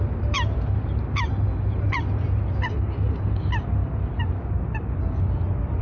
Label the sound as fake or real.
real